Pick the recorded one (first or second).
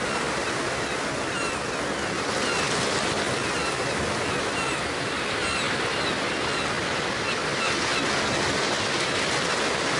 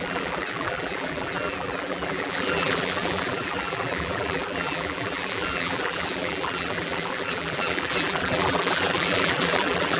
first